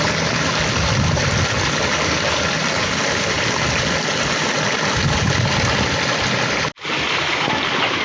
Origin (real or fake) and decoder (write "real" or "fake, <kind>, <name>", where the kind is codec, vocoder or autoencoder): real